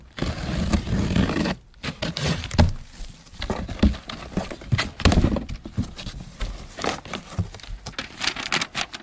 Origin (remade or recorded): recorded